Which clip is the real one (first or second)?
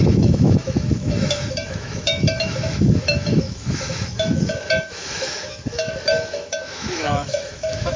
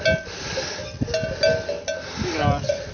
second